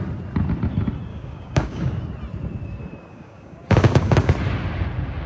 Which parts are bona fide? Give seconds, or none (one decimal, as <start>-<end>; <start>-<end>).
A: 0.0-1.1; 2.0-3.1; 4.3-5.3